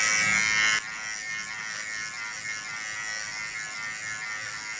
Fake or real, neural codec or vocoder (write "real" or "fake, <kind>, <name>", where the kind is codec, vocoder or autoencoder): real